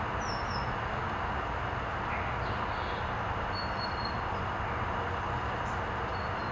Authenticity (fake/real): real